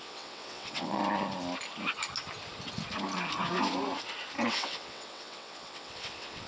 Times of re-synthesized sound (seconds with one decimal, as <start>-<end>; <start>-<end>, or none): 0.0-1.0; 4.5-6.5